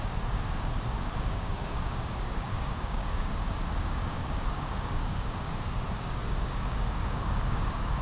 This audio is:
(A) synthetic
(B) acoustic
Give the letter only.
A